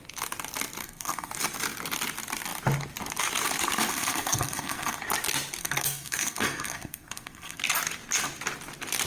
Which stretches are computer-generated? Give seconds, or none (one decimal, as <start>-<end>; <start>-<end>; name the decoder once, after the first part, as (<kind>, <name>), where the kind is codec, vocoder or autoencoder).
0.8-1.3 (codec, SNAC); 3.9-5.0; 5.6-7.6